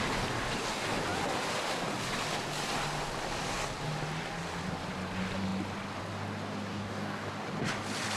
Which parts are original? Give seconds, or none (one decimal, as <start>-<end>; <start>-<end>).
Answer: 0.0-6.7; 7.3-8.2